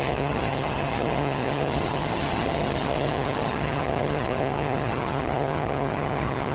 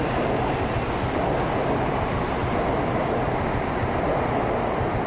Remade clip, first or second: first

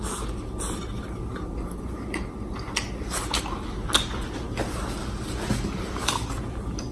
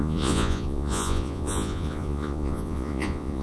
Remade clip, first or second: second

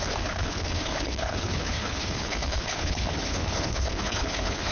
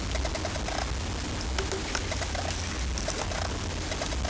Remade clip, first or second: first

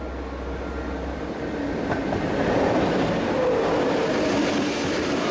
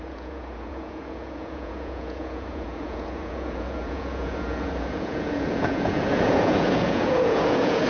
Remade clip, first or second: second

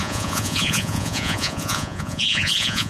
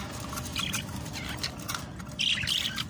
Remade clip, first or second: first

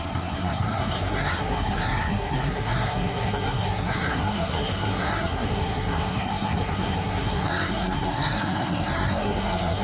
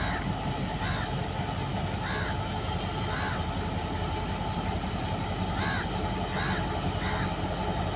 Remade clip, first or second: first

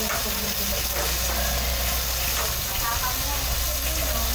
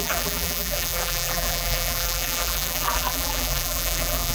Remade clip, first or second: second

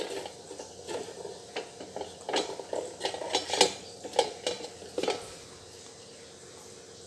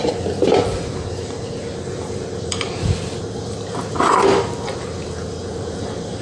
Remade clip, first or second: second